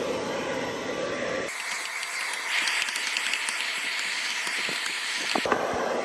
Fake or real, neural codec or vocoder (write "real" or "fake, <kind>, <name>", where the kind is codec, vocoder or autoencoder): real